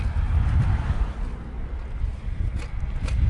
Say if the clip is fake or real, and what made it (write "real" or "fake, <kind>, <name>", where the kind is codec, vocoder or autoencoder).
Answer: real